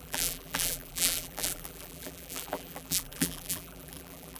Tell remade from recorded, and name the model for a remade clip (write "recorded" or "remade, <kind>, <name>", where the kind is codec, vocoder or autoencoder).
remade, vocoder, BigVGAN v2